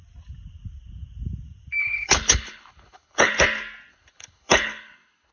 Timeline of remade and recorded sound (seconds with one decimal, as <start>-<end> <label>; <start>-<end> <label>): 0.0-1.8 recorded; 1.8-3.3 remade; 3.3-3.9 recorded; 3.9-5.3 remade